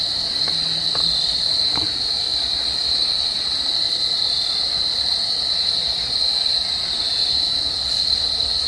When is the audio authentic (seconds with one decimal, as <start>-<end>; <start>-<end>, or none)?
0.0-8.7